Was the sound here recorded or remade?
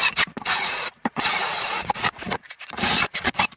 remade